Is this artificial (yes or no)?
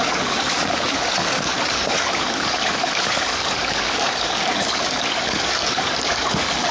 yes